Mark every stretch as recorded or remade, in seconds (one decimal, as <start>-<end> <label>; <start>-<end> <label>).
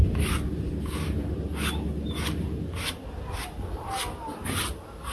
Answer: 0.0-5.1 recorded